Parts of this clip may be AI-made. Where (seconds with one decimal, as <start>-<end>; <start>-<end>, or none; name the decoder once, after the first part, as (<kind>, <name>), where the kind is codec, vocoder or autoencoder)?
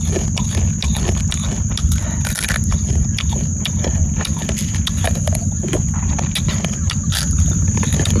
none